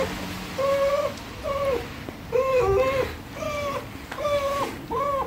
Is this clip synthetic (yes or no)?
no